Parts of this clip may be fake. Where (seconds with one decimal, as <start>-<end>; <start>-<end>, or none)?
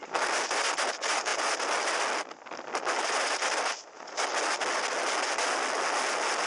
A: none